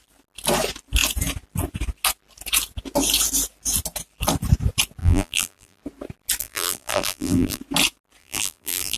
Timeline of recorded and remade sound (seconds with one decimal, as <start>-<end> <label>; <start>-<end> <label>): 0.0-5.0 recorded; 5.0-5.8 remade; 5.8-6.4 recorded; 6.4-7.6 remade; 7.6-8.2 recorded; 8.2-9.0 remade